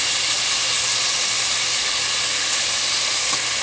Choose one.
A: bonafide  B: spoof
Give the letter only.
A